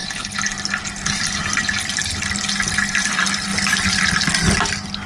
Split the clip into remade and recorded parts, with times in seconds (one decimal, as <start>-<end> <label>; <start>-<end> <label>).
0.0-5.1 recorded